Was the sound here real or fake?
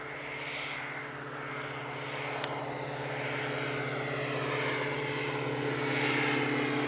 real